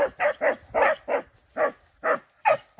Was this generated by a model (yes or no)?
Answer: no